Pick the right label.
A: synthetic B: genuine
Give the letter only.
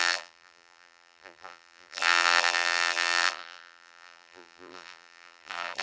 A